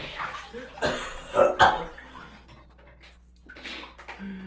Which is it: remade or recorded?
recorded